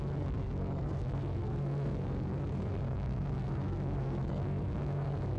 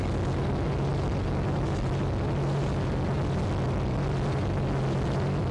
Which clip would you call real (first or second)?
second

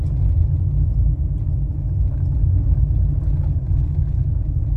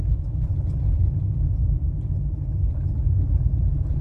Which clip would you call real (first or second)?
first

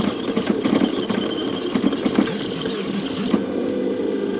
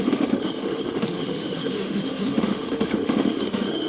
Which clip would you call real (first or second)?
first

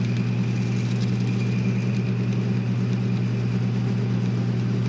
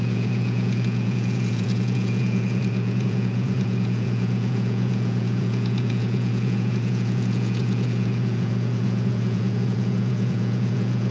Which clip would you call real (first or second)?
first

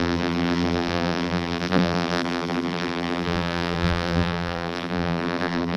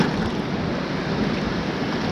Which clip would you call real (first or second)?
second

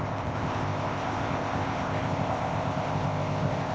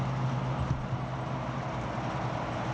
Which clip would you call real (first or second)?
second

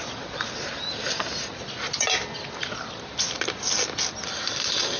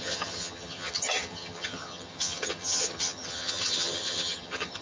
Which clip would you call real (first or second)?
first